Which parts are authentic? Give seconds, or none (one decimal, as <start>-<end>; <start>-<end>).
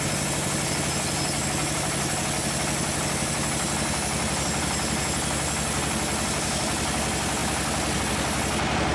0.0-8.9